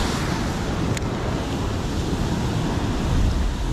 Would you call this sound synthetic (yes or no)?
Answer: no